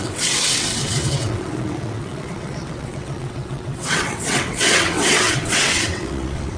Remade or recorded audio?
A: remade